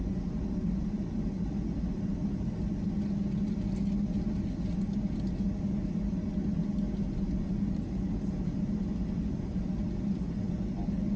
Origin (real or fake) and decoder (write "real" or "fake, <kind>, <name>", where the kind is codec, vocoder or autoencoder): real